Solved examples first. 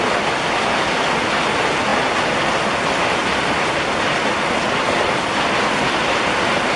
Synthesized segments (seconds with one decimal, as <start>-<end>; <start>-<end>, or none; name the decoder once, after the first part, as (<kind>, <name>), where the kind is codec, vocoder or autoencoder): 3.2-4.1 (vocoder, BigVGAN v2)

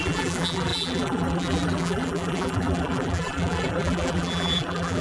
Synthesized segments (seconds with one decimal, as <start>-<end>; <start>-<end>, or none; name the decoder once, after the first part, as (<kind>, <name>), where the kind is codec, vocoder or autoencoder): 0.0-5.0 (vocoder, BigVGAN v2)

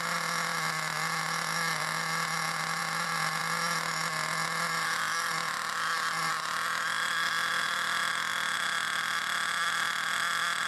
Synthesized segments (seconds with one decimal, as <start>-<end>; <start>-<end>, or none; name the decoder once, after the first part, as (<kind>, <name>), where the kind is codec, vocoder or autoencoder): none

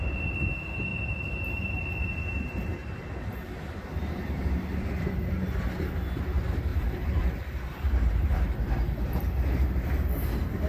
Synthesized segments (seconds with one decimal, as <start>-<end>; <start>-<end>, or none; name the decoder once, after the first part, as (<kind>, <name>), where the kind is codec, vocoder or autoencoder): 0.9-1.9 (vocoder, BigVGAN v2); 2.8-4.5; 6.7-8.4